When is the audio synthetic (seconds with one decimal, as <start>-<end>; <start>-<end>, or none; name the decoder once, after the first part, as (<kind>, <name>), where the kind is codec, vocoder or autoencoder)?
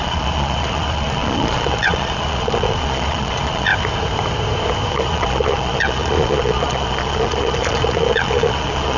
0.0-3.7 (vocoder, Vocos); 4.9-9.0